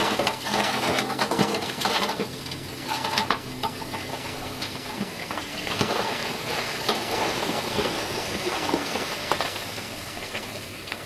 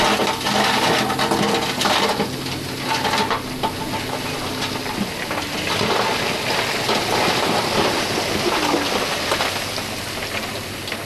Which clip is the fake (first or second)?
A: first